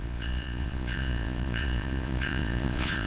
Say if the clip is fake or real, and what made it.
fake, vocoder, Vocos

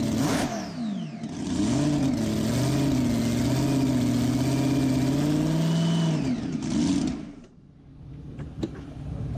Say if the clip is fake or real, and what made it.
real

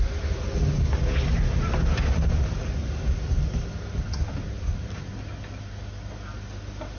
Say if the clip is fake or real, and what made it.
real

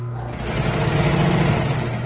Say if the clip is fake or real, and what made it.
real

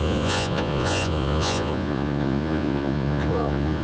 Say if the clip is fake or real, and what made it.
fake, vocoder, Vocos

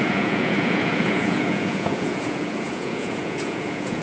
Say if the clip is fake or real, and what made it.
fake, vocoder, Vocos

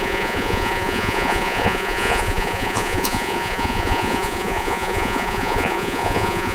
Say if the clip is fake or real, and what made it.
fake, vocoder, Vocos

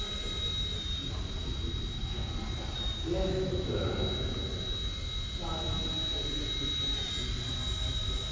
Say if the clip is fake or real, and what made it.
real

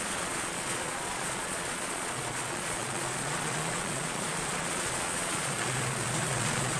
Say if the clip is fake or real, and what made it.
fake, vocoder, Vocos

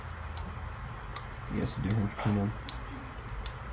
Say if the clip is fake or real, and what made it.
real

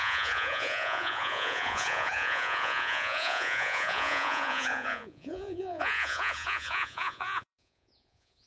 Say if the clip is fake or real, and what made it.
fake, vocoder, Vocos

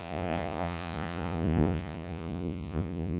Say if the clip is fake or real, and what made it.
fake, vocoder, Vocos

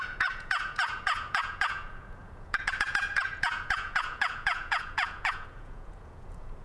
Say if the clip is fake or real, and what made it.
fake, vocoder, Vocos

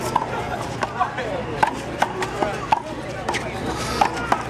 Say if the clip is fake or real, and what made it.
real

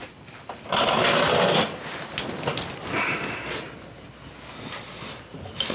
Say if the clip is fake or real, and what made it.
real